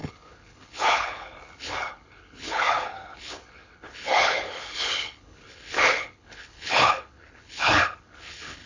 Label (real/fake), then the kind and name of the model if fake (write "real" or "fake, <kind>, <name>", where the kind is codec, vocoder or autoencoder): fake, codec, HILCodec